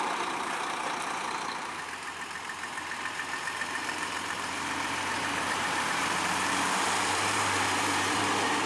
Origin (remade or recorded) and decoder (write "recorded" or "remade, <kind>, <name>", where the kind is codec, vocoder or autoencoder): remade, vocoder, BigVGAN v2